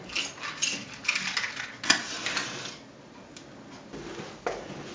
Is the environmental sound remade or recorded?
recorded